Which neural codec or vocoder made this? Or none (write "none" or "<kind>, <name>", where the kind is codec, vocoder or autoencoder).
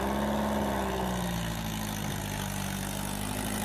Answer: none